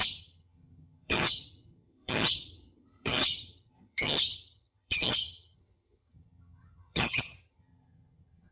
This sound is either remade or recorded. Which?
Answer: remade